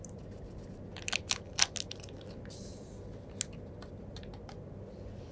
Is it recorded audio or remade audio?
recorded